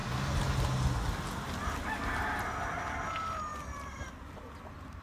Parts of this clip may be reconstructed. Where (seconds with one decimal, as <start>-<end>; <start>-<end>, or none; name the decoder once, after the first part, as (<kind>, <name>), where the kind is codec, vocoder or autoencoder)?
none